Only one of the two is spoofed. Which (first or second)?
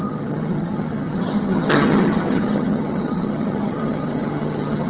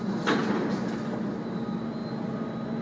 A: first